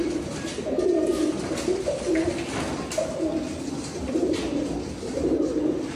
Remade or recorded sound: recorded